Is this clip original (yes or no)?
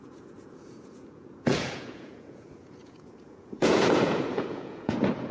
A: no